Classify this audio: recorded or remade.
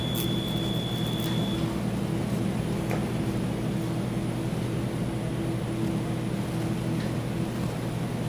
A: recorded